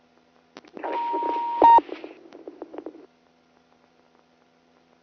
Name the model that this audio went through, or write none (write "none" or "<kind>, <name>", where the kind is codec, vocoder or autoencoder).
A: none